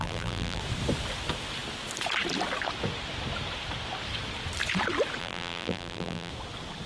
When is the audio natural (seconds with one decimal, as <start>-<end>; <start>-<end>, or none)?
0.6-5.2; 6.3-6.9